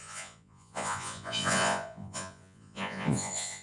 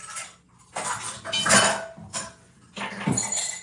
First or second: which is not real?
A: first